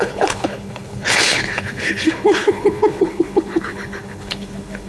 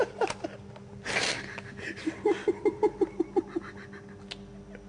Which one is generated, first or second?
first